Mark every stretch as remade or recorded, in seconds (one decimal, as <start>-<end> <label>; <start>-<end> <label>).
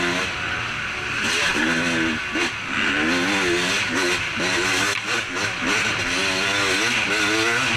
0.0-7.8 recorded